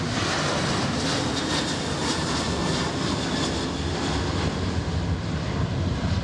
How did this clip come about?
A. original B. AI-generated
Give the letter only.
A